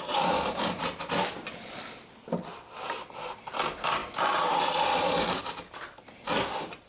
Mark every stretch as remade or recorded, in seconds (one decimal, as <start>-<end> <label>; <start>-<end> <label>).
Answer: 0.0-6.9 recorded